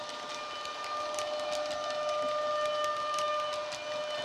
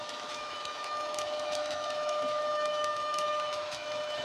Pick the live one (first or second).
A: first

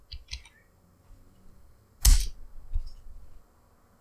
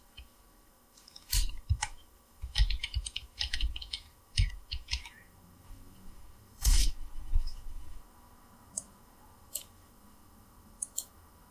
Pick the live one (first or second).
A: first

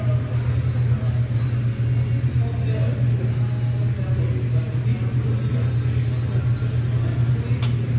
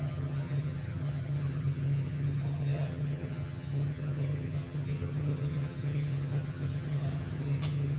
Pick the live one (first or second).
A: first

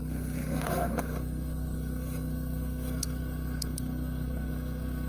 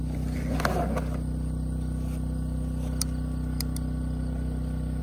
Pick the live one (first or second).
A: second